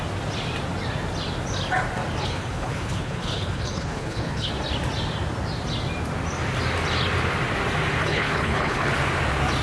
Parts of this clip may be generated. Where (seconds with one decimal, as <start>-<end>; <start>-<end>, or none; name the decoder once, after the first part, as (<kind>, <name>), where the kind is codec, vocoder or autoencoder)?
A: 2.2-4.5 (codec, HILCodec); 8.0-8.9